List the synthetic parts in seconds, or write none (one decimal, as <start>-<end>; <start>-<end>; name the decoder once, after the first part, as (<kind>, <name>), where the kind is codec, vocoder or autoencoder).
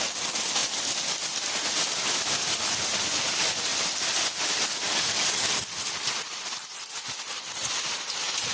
none